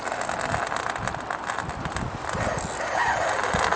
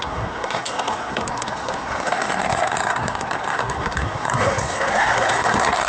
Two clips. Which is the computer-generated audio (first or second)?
second